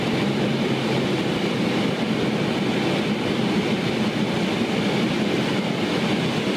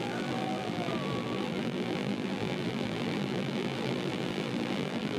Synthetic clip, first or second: second